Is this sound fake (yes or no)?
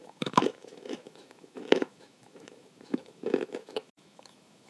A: yes